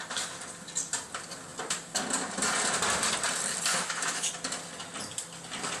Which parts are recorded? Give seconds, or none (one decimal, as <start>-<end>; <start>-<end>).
0.0-3.7; 4.3-5.8